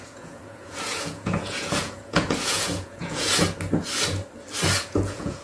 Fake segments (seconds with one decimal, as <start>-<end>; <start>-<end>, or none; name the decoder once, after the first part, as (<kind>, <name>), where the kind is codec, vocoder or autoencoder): 0.0-3.3 (vocoder, Vocos); 4.8-5.4